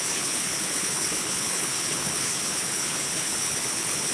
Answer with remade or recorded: remade